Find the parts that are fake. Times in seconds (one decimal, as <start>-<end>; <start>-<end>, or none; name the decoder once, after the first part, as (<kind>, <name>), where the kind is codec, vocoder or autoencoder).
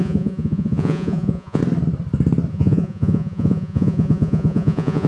0.0-1.6 (vocoder, Vocos); 2.5-5.1